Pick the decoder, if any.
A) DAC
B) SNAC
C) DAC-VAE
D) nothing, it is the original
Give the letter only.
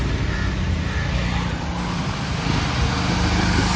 D